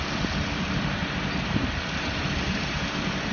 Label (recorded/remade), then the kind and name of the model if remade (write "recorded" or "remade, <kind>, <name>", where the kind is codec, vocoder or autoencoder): recorded